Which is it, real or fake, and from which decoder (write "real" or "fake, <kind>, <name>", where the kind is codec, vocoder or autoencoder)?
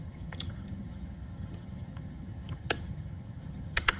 fake, vocoder, HiFi-GAN